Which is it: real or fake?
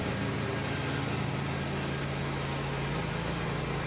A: real